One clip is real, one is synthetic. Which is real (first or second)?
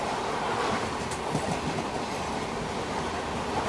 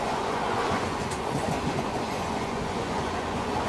first